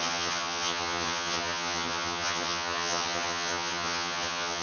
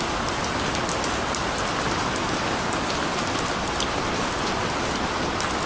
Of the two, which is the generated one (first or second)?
first